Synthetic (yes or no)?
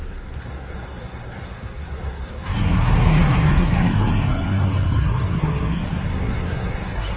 yes